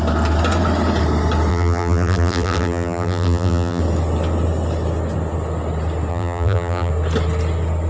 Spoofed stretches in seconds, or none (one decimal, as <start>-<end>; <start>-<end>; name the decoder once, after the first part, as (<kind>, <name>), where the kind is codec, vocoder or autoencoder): 1.5-3.8 (vocoder, BigVGAN v2); 6.1-6.9